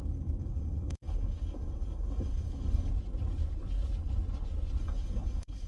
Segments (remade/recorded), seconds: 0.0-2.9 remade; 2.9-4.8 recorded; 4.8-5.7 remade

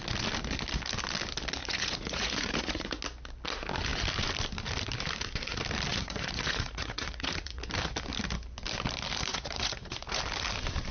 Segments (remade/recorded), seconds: 0.0-1.6 recorded; 1.6-3.0 remade; 3.0-5.9 recorded; 5.9-7.6 remade; 7.6-9.3 recorded; 9.3-10.2 remade; 10.2-10.9 recorded

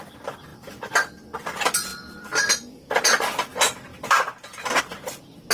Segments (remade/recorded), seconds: 0.0-0.5 recorded; 0.5-1.2 remade; 1.2-1.9 recorded; 1.9-3.0 remade; 3.0-5.5 recorded

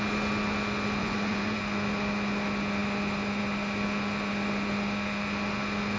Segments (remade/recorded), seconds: 0.0-1.0 recorded; 1.0-1.6 remade; 1.6-6.0 recorded

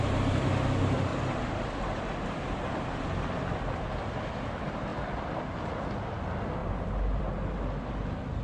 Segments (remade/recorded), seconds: 0.0-1.1 recorded; 1.1-3.8 remade; 3.8-8.4 recorded

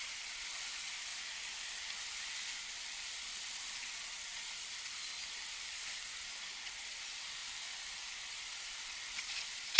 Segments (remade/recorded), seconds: 0.0-1.1 remade; 1.1-3.4 recorded; 3.4-5.2 remade; 5.2-6.4 recorded; 6.4-7.4 remade; 7.4-8.3 recorded; 8.3-9.8 remade